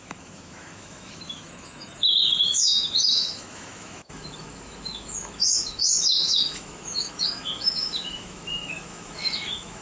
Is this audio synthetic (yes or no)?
yes